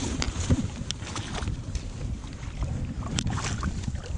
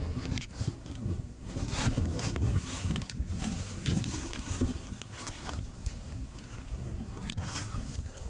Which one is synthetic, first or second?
second